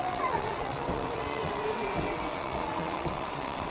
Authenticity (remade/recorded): remade